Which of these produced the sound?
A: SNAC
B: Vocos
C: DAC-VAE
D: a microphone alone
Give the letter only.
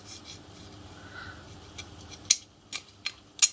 D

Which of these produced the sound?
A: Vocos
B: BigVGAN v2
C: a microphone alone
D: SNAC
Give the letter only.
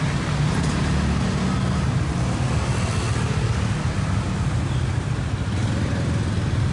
C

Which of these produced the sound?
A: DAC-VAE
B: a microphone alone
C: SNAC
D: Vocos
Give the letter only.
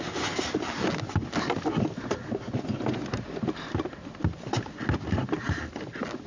B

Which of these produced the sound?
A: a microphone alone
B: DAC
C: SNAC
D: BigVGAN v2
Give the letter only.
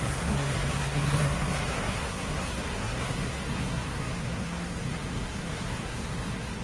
C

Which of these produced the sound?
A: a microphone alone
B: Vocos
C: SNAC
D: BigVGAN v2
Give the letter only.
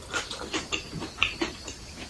D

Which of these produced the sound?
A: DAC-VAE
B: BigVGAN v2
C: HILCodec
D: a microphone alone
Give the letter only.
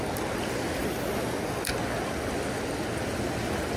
D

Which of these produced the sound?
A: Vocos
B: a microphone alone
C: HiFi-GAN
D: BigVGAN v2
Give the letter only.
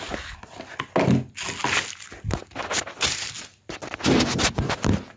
B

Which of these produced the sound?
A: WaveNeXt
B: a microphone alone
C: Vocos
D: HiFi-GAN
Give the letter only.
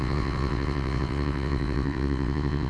A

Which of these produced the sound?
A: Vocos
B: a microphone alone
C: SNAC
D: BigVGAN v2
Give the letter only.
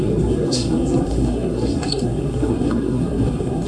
C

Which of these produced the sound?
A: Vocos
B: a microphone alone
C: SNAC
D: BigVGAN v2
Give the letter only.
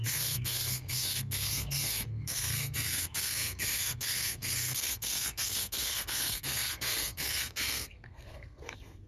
C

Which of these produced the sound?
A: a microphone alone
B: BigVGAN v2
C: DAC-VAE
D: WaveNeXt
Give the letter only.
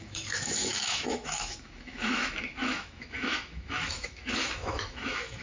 C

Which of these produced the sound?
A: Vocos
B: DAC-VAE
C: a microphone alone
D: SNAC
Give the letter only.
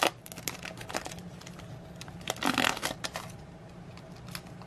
C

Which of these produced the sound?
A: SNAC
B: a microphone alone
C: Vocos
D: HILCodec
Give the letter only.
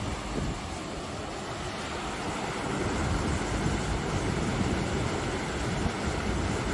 B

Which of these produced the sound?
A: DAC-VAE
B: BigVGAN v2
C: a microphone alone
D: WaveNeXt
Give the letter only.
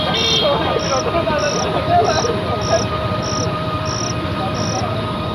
C